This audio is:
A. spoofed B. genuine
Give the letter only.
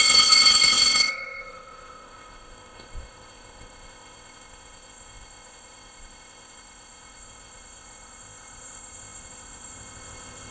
A